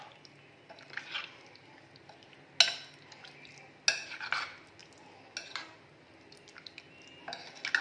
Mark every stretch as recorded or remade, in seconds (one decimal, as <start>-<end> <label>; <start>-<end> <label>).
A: 0.0-7.8 recorded